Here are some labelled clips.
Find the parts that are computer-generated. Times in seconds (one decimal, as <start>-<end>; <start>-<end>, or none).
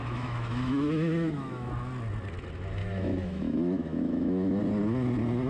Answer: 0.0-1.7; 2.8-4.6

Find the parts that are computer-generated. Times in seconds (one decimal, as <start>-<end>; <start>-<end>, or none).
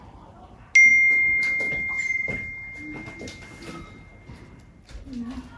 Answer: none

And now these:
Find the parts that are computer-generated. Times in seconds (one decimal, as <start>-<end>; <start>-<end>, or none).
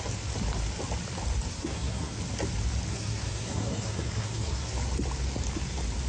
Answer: 1.5-2.2; 2.9-4.7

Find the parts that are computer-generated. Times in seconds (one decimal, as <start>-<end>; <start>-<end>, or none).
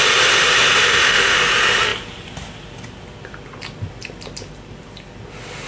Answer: 0.9-1.4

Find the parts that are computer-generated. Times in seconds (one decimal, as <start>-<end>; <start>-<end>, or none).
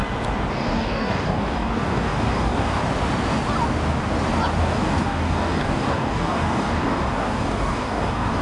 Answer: 0.5-2.8; 4.6-8.4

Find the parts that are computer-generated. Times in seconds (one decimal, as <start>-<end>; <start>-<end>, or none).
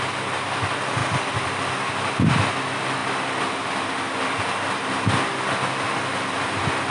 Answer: none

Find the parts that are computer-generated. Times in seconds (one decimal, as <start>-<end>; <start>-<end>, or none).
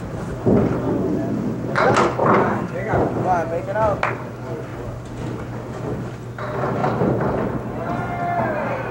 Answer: none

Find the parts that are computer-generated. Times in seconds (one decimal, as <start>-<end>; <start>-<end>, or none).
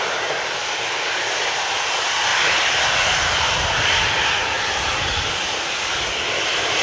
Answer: none